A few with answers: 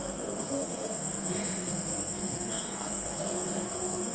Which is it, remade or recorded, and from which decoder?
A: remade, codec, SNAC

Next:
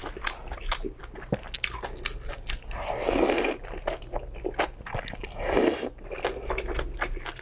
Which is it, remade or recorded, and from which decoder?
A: recorded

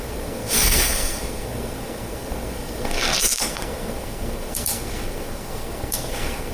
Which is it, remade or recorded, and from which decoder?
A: remade, codec, SNAC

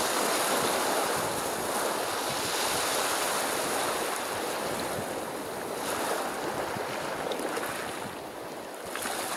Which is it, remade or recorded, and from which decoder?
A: recorded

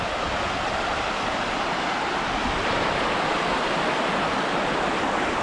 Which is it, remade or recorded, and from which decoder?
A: recorded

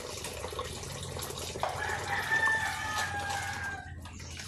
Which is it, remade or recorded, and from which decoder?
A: recorded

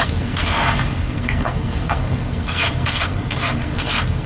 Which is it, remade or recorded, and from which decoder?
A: remade, codec, SNAC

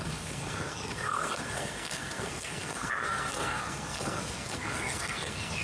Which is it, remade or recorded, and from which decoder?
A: remade, codec, SNAC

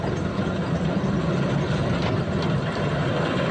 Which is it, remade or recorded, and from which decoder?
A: recorded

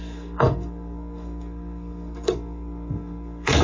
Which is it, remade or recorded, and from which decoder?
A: remade, codec, SNAC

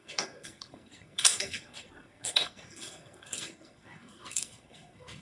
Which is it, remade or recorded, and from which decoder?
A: remade, codec, SNAC